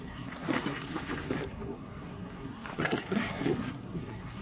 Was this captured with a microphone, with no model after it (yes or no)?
no